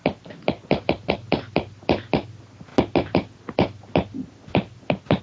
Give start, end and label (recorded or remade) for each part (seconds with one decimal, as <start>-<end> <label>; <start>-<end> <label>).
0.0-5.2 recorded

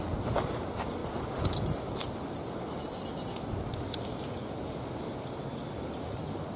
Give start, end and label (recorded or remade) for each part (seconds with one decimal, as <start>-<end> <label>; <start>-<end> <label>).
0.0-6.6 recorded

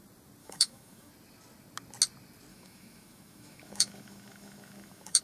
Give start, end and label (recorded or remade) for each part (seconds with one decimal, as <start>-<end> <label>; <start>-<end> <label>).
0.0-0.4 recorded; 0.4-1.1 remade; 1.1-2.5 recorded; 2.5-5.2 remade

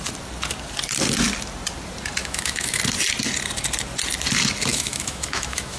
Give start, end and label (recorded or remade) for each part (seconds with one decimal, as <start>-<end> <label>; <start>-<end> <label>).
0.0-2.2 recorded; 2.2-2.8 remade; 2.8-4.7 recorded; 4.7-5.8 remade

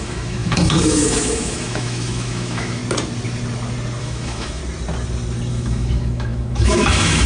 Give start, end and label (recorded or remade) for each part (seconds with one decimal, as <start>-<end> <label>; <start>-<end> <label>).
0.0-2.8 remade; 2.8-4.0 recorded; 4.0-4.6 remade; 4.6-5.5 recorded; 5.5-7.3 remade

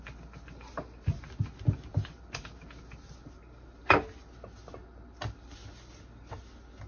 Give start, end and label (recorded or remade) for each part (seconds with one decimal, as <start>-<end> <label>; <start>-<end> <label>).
0.0-6.9 recorded